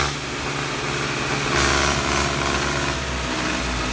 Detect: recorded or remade recorded